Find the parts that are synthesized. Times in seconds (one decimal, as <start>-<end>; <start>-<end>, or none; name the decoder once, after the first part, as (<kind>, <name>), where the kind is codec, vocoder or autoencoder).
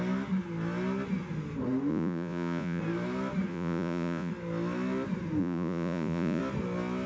1.9-2.8 (vocoder, Vocos); 3.5-4.3; 5.4-6.4